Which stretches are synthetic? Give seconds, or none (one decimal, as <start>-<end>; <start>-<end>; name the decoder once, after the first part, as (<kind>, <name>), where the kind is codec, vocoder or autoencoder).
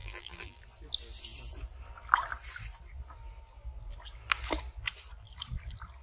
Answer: 0.0-0.6 (vocoder, BigVGAN v2)